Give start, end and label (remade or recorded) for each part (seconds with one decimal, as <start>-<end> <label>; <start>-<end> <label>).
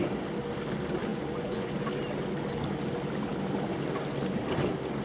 0.0-1.1 recorded; 1.1-1.7 remade; 1.7-5.0 recorded